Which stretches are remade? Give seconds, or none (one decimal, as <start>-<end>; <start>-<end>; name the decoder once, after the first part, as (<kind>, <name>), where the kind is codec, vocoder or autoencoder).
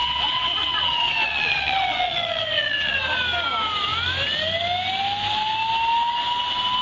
0.0-3.0 (vocoder, WaveNeXt)